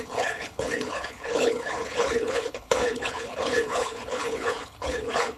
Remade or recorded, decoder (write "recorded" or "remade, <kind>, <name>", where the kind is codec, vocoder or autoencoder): remade, codec, HILCodec